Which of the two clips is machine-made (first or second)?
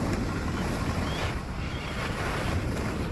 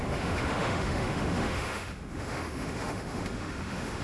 second